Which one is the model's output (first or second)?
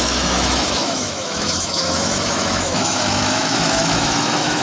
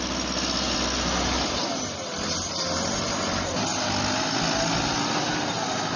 first